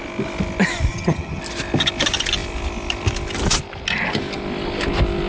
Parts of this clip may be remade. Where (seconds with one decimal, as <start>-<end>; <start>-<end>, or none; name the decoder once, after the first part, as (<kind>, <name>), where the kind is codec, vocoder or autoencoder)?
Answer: 0.9-1.4 (vocoder, HiFi-GAN)